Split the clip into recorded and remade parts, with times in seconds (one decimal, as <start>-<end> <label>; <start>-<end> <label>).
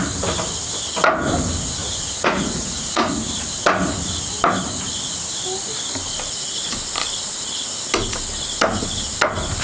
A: 0.0-1.8 recorded; 1.8-3.1 remade; 3.1-9.6 recorded